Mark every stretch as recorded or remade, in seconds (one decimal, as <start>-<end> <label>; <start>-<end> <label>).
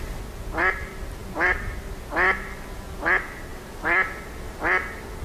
0.0-5.2 recorded